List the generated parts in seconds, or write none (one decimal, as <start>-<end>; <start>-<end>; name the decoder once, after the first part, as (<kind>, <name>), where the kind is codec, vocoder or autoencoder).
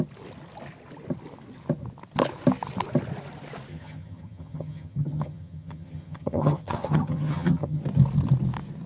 3.7-7.8 (vocoder, HiFi-GAN)